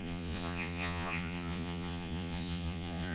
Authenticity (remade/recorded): remade